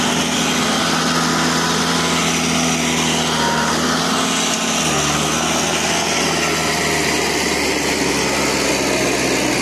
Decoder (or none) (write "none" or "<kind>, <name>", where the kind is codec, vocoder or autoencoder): none